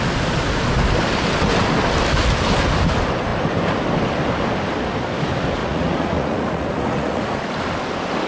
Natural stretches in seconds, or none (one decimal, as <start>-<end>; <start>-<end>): 0.0-5.6; 7.4-8.3